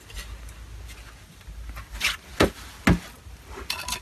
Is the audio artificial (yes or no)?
no